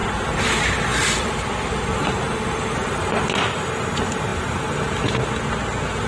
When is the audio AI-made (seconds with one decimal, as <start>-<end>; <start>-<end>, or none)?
0.0-3.7